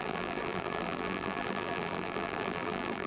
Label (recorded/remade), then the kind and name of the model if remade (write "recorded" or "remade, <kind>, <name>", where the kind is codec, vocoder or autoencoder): remade, vocoder, BigVGAN v2